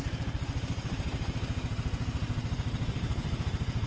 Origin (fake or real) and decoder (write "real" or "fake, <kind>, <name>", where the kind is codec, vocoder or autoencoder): fake, vocoder, BigVGAN v2